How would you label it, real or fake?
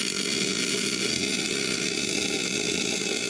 real